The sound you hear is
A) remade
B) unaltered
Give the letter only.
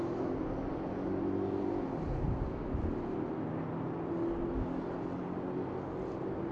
B